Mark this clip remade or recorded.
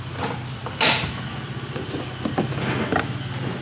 recorded